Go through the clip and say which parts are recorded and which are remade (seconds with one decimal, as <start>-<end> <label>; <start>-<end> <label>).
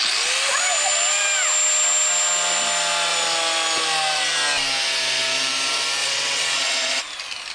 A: 0.0-6.0 recorded; 6.0-7.0 remade; 7.0-7.5 recorded